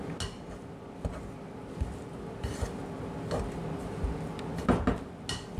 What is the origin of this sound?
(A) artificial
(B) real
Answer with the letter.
B